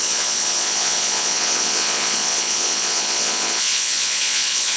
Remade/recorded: remade